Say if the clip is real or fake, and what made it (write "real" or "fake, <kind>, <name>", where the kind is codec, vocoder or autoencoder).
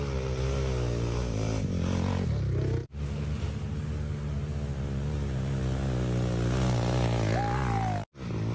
real